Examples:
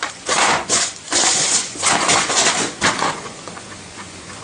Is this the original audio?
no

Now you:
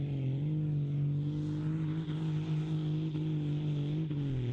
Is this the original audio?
yes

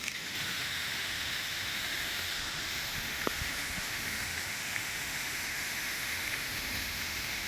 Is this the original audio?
no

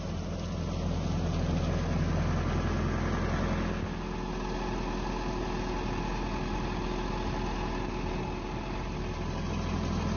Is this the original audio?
yes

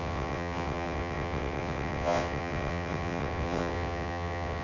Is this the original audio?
no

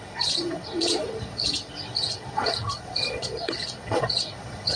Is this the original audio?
no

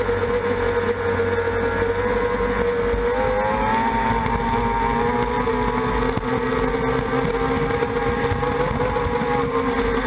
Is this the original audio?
yes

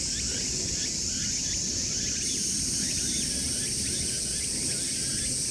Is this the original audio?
yes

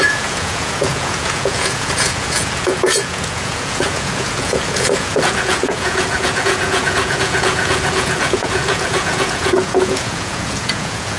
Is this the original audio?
no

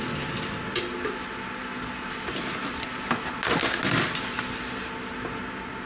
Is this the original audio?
yes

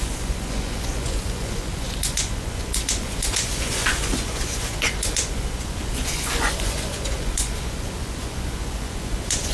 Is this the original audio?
no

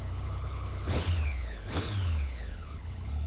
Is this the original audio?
no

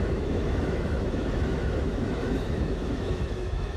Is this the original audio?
no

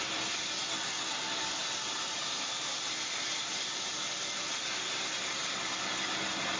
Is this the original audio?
yes